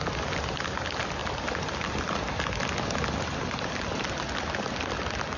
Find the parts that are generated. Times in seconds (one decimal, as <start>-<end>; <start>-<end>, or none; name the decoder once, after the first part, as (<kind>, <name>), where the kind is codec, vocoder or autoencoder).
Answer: none